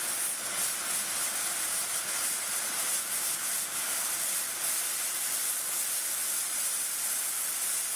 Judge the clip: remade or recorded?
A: recorded